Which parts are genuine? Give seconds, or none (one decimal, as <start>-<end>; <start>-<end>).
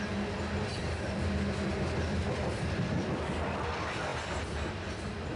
0.0-0.7; 1.7-2.2; 3.1-5.4